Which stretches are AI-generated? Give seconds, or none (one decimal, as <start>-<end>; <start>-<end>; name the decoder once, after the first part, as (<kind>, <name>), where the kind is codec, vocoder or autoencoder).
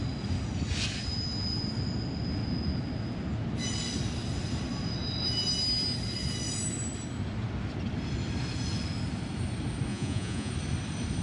9.9-10.5 (vocoder, Vocos)